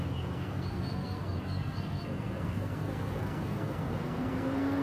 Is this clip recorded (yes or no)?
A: no